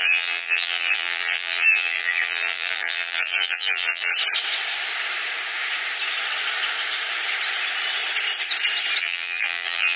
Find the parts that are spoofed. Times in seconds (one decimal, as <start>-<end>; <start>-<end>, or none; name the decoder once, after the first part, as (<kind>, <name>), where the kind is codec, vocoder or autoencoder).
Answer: 0.0-4.1 (vocoder, BigVGAN v2); 9.0-10.0